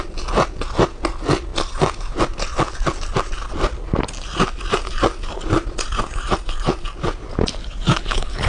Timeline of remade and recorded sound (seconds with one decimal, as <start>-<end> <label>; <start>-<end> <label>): 0.0-7.6 recorded; 7.6-8.5 remade